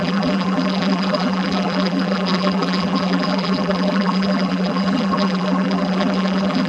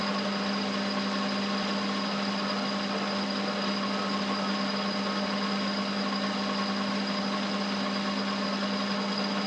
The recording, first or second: second